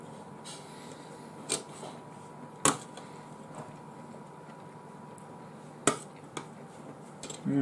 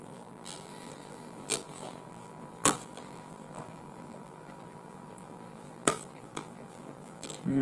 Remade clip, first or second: second